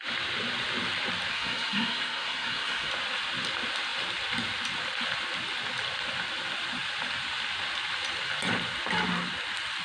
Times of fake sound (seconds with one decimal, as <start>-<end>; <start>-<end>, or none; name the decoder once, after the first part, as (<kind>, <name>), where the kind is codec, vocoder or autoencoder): 1.3-2.9 (codec, SNAC)